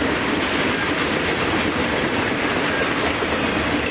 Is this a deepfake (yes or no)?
no